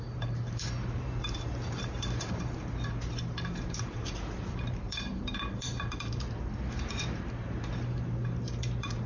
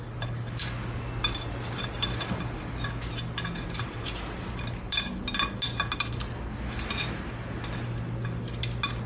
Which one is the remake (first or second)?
first